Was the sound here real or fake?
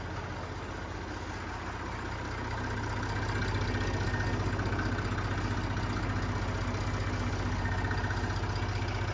real